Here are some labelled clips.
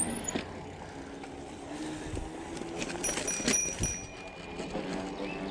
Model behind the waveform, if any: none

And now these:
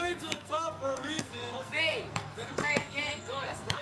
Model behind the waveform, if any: codec, SNAC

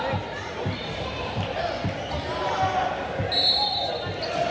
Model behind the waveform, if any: none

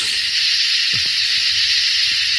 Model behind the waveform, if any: none